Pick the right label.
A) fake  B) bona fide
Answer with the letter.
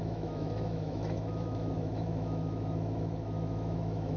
A